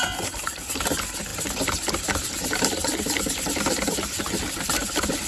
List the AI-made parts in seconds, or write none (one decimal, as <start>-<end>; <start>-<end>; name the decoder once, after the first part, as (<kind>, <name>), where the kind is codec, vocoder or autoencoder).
none